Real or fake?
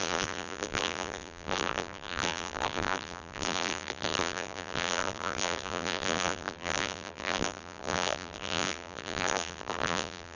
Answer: fake